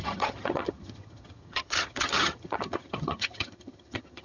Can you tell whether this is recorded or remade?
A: remade